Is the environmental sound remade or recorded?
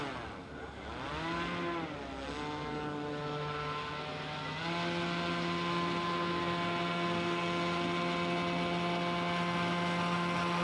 recorded